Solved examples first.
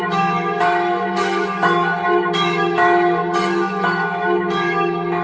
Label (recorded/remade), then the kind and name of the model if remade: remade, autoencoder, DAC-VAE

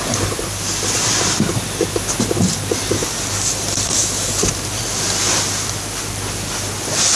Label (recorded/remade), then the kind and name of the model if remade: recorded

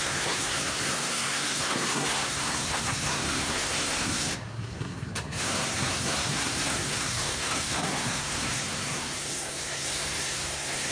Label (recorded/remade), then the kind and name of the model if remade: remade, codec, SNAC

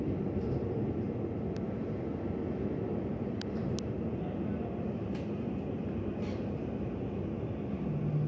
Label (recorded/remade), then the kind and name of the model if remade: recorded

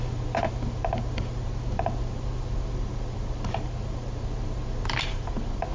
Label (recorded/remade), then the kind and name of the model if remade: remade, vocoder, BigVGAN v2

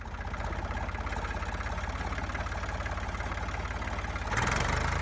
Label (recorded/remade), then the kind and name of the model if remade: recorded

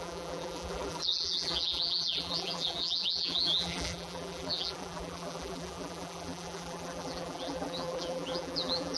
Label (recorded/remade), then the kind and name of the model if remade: remade, vocoder, BigVGAN v2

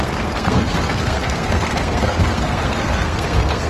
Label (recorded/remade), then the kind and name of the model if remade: remade, codec, SNAC